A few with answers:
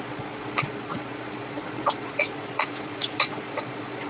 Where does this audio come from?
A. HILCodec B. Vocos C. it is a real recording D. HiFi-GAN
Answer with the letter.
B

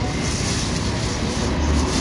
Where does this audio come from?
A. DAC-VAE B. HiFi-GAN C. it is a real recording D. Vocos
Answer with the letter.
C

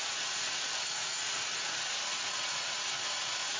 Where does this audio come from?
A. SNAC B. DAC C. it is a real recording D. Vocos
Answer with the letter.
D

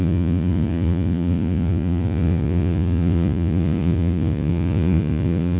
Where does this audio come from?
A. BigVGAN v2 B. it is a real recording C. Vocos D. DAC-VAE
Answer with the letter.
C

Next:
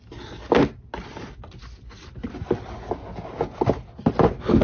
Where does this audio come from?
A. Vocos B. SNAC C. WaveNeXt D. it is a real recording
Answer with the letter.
D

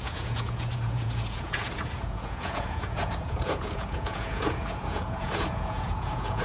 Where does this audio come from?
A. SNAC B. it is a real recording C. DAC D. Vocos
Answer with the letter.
D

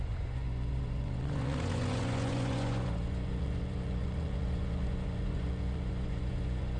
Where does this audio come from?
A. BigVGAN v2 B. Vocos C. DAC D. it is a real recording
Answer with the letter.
B